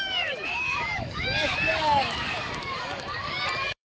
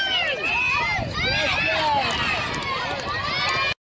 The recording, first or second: second